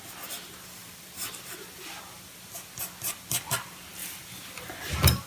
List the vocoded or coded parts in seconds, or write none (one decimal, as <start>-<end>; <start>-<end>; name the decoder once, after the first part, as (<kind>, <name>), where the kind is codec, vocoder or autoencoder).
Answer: 0.8-1.3 (vocoder, BigVGAN v2); 4.0-4.7